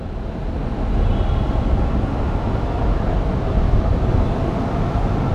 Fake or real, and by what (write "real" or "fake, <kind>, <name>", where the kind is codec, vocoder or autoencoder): real